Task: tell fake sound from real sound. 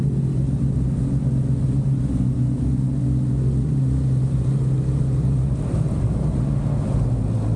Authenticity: real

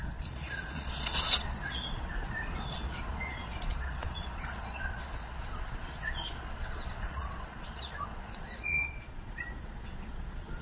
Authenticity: fake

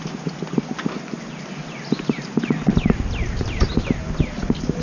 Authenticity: real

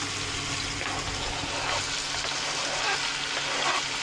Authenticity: real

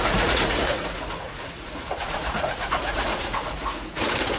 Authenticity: fake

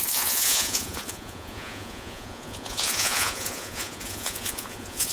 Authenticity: fake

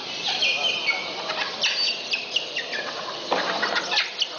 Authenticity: real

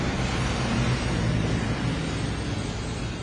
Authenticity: real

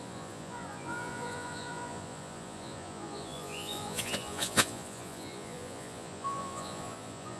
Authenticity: fake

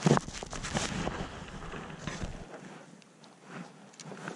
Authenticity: real